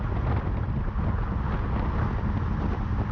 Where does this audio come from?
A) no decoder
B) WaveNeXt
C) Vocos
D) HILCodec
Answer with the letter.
A